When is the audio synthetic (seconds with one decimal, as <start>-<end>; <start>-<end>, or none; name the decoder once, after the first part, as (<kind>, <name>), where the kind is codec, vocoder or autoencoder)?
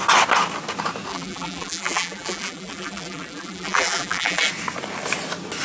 1.1-4.5 (vocoder, BigVGAN v2)